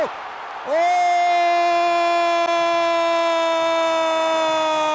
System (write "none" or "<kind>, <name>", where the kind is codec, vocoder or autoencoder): none